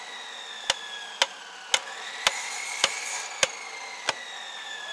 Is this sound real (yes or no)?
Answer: yes